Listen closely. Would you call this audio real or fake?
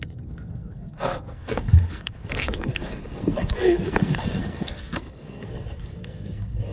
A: fake